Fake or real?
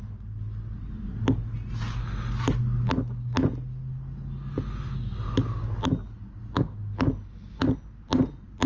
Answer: real